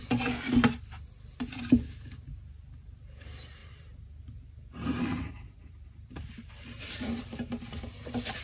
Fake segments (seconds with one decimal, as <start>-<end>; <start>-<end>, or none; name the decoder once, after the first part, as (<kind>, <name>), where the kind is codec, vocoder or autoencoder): 3.6-7.2 (vocoder, BigVGAN v2)